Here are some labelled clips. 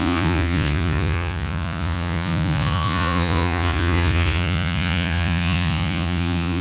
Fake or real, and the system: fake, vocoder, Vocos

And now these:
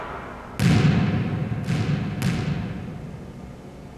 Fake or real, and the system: real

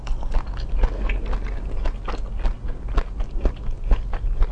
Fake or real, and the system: real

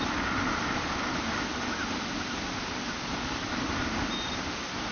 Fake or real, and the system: real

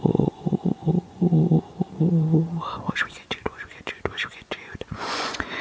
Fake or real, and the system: fake, vocoder, Vocos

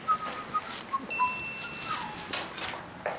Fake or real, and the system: real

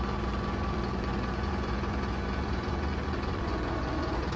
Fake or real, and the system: fake, vocoder, Vocos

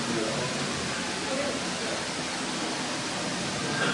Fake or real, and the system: real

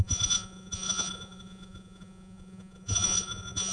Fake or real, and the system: fake, vocoder, Vocos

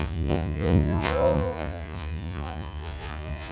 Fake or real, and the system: fake, vocoder, Vocos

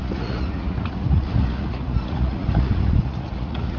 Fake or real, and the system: fake, vocoder, Vocos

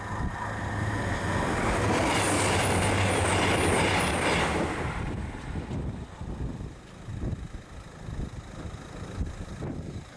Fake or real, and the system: real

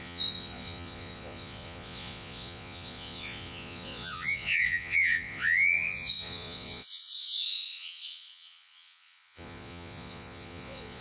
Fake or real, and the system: fake, vocoder, Vocos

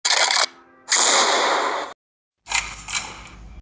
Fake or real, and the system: real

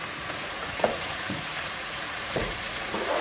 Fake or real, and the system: fake, vocoder, Vocos